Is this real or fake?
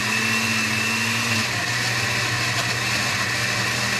real